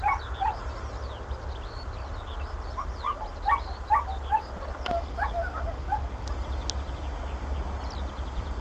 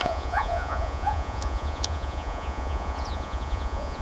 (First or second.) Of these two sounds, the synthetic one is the second